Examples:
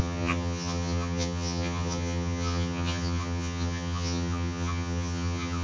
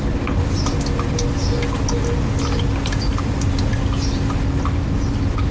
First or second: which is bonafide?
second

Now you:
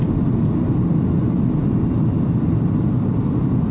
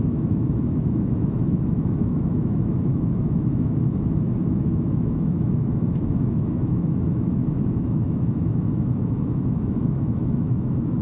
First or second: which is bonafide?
first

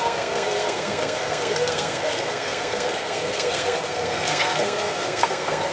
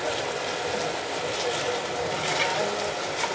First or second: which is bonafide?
second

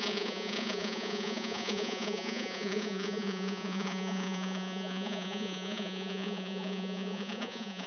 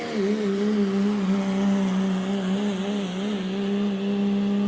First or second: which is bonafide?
second